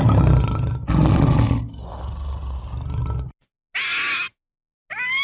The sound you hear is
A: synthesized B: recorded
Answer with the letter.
B